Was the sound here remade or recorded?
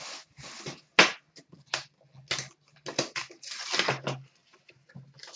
recorded